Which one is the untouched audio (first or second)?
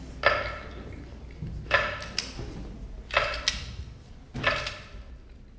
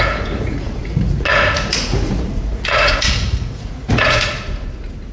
first